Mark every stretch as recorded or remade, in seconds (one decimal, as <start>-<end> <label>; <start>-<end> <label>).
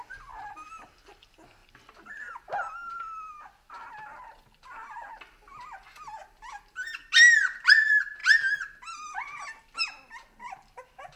0.0-11.2 recorded